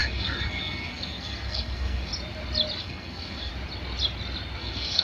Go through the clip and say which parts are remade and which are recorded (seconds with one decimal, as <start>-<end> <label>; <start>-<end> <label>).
0.0-2.1 remade; 2.1-2.8 recorded; 2.8-3.5 remade; 3.5-4.6 recorded; 4.6-5.0 remade